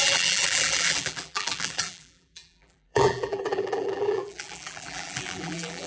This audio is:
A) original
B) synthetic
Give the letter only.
B